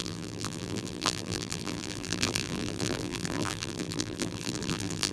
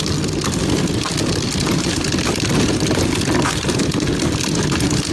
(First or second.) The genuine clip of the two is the second